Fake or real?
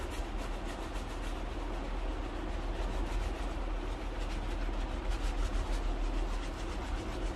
real